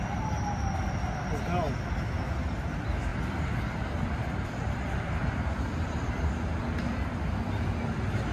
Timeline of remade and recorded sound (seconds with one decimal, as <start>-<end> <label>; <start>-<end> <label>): 0.0-3.1 recorded; 3.1-5.6 remade; 5.6-8.3 recorded